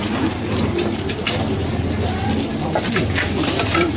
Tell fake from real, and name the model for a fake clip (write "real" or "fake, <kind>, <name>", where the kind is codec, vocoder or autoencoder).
real